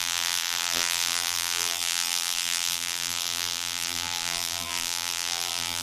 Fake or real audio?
fake